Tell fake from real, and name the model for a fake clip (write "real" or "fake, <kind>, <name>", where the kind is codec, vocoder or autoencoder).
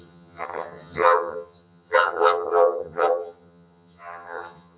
fake, vocoder, HiFi-GAN